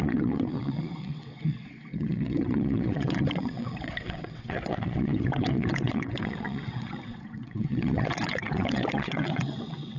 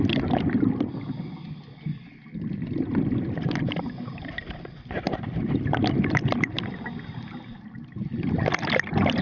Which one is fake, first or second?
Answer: first